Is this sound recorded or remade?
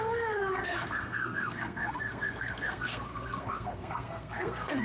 remade